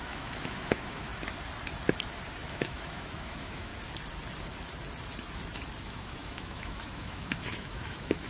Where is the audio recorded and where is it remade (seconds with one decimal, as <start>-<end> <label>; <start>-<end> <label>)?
0.0-1.1 remade; 1.1-2.5 recorded; 2.5-3.7 remade; 3.7-5.8 recorded; 5.8-8.3 remade